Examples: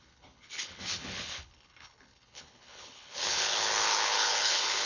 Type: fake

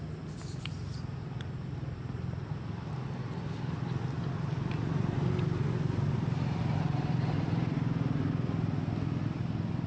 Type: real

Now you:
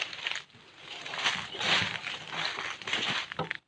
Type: real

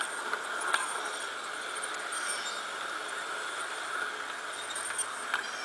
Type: real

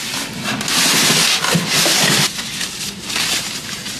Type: real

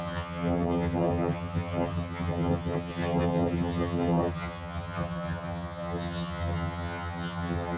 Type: fake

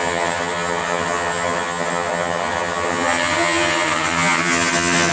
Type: fake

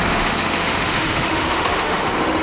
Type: fake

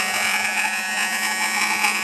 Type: fake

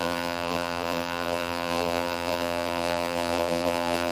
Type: fake